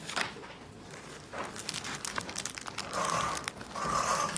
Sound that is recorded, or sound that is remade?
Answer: recorded